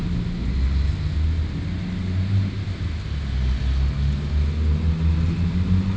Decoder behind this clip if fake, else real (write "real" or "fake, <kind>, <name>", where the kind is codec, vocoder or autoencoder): real